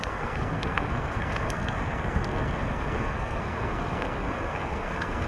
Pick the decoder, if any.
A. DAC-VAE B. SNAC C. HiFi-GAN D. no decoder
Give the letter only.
B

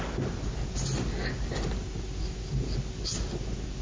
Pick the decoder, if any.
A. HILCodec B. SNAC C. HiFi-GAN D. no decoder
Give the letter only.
D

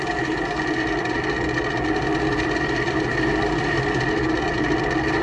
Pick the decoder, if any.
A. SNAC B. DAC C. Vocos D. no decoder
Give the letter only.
D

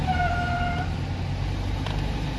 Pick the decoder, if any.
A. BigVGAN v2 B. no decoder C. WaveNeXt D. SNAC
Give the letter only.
B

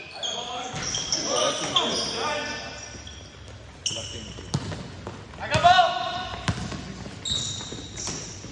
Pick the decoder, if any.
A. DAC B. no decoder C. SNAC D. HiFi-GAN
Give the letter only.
B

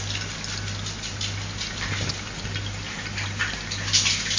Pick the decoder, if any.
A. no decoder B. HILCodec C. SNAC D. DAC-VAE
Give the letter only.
A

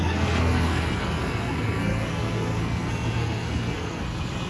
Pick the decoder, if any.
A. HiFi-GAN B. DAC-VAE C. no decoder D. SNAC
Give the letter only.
D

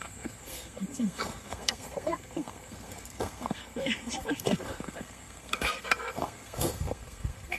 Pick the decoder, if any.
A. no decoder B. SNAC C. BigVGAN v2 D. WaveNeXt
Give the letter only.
B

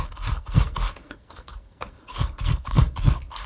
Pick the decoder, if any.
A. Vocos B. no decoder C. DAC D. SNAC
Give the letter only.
D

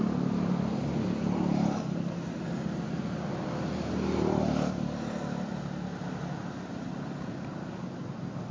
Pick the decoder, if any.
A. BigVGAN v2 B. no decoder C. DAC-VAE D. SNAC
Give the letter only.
B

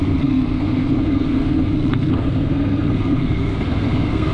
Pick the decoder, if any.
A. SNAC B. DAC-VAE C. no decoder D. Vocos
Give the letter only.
A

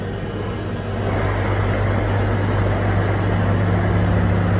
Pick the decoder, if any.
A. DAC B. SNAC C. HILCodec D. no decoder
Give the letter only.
D